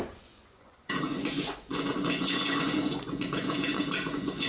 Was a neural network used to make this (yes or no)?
yes